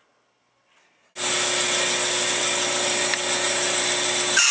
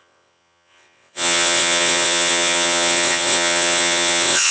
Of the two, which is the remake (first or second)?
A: second